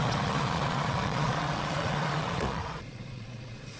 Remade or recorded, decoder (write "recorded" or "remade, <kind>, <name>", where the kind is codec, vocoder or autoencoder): remade, vocoder, Vocos